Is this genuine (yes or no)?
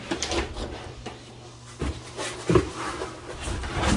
yes